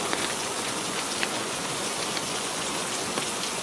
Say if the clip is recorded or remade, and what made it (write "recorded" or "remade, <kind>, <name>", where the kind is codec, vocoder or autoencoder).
remade, vocoder, Vocos